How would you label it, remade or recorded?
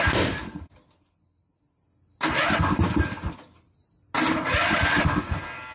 recorded